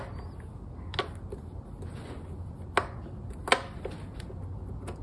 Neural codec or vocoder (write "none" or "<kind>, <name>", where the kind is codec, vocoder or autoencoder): none